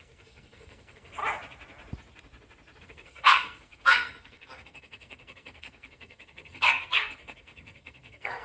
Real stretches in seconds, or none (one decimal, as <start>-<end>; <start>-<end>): 1.2-2.8